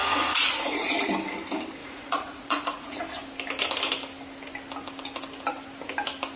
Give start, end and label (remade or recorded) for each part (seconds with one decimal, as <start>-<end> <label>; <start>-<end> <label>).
0.0-0.9 remade; 0.9-1.8 recorded; 1.8-3.0 remade; 3.0-6.4 recorded